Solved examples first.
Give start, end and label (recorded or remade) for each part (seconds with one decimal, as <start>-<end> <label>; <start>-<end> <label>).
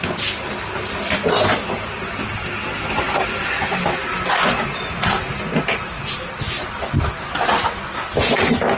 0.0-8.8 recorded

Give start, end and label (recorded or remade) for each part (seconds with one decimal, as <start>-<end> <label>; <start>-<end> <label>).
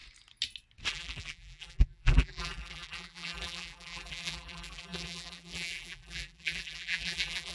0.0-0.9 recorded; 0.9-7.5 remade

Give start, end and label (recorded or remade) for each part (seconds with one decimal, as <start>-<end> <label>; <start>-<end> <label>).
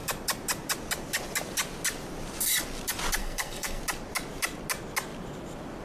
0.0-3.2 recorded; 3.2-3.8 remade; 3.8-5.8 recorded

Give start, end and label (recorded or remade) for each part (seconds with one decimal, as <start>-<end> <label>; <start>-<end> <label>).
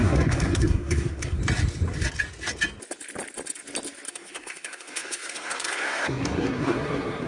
0.0-1.4 remade; 1.4-4.1 recorded; 4.1-7.3 remade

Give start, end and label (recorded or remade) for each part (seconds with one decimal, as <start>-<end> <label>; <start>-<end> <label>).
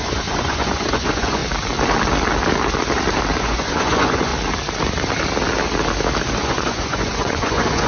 0.0-1.4 remade; 1.4-3.4 recorded; 3.4-4.3 remade; 4.3-6.4 recorded; 6.4-7.9 remade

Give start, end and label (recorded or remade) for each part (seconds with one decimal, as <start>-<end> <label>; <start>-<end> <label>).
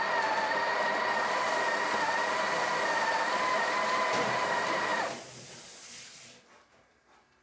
0.0-7.4 recorded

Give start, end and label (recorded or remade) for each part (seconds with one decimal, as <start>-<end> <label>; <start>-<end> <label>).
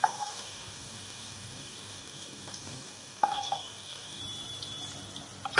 0.0-4.2 remade; 4.2-5.6 recorded